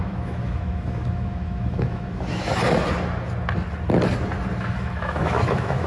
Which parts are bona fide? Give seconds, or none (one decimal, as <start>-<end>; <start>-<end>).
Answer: 2.5-4.6